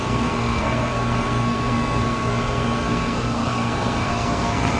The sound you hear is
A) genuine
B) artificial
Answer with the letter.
B